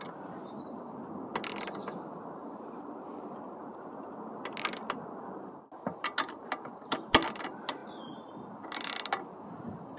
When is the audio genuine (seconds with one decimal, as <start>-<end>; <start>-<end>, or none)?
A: 0.0-10.0

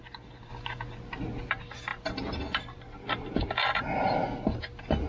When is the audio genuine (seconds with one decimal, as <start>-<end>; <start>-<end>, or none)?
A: 0.0-5.1